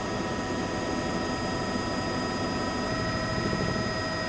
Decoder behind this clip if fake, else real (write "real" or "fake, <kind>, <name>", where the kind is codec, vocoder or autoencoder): real